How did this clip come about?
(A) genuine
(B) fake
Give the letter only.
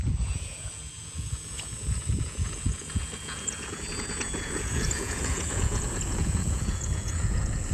B